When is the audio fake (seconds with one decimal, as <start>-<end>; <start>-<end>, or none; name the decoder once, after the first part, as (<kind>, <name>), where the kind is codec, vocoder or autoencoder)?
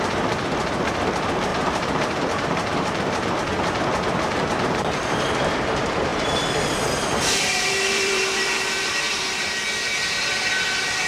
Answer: 1.5-3.3 (vocoder, BigVGAN v2); 6.1-9.5